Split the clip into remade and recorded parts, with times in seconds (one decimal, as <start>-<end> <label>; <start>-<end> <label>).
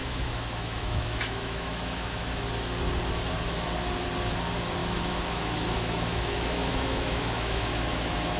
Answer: 0.0-2.5 remade; 2.5-4.8 recorded; 4.8-8.4 remade